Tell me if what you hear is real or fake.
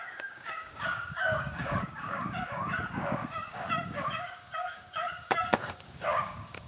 fake